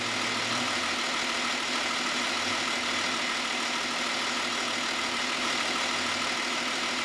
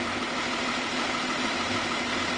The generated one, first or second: second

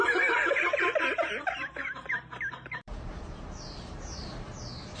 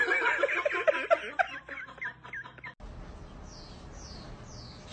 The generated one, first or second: first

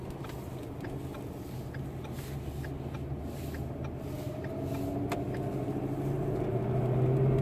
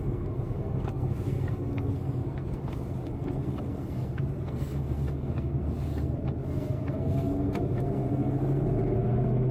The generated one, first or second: second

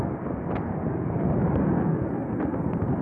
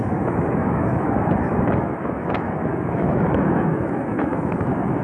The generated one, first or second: second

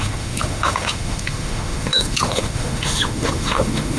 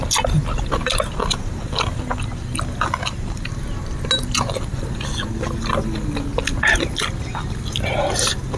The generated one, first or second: first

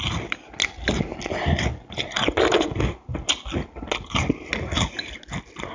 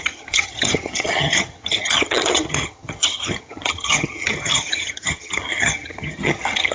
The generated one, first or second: second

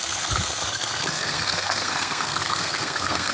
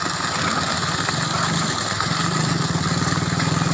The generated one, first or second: first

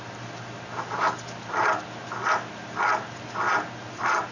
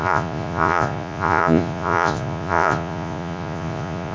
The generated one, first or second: second